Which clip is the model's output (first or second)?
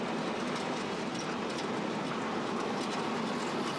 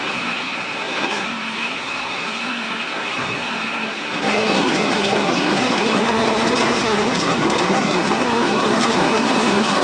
second